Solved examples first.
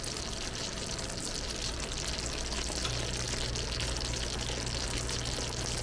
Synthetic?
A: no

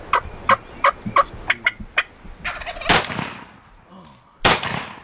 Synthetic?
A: no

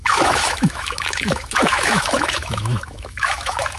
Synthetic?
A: yes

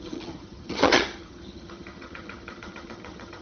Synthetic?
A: yes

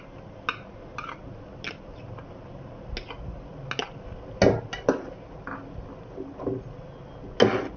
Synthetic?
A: no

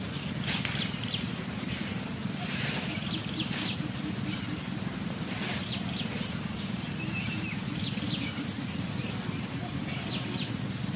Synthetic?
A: no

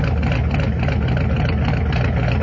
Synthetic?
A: no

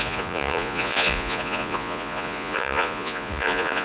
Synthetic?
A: yes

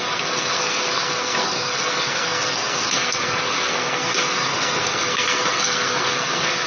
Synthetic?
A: yes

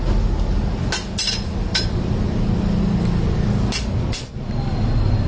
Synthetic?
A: no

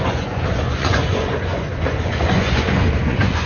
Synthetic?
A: yes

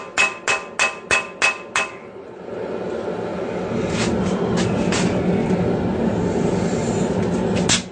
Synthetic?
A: no